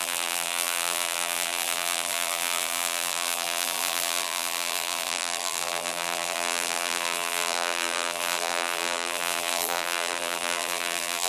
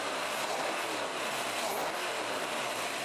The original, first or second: second